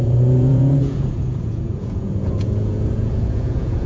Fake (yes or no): yes